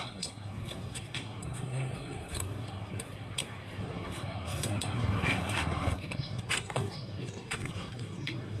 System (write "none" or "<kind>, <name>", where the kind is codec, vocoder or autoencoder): codec, SNAC